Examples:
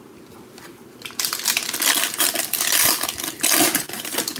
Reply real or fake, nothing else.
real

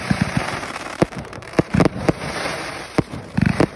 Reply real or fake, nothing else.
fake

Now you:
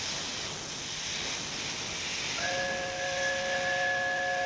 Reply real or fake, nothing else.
real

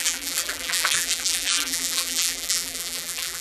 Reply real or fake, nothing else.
fake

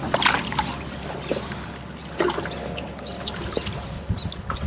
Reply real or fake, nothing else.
real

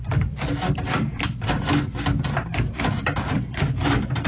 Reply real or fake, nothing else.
fake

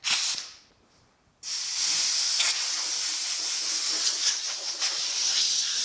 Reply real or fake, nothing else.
real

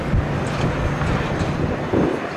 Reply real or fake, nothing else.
real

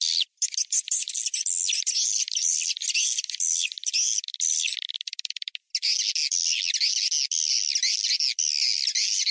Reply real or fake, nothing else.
real